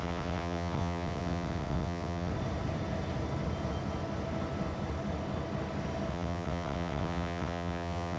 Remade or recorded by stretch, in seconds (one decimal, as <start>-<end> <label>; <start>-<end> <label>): 0.0-2.3 remade; 2.3-6.1 recorded; 6.1-8.2 remade